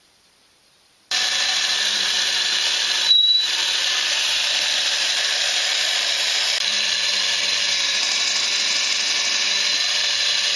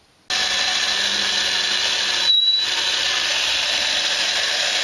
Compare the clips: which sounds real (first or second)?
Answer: second